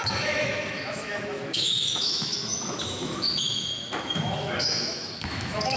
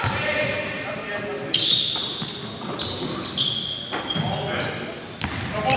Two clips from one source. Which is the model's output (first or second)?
first